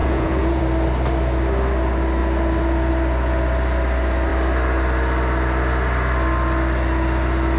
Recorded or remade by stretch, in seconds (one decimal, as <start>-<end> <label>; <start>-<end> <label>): 0.0-0.6 remade; 0.6-7.6 recorded